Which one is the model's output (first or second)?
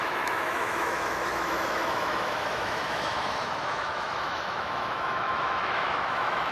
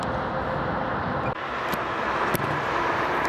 first